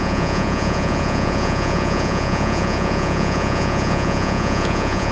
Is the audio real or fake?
fake